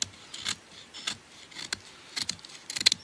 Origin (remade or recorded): recorded